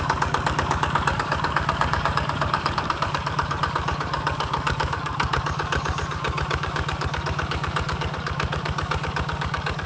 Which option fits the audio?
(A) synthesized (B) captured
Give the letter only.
A